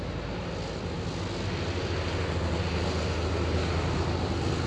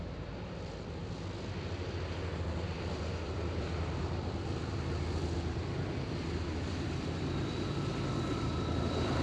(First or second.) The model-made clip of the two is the second